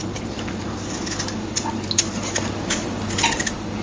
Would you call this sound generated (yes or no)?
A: no